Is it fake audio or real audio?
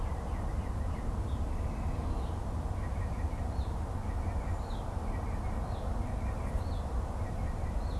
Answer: real